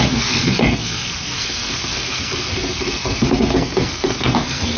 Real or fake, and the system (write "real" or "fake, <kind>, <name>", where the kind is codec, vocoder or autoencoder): fake, codec, SNAC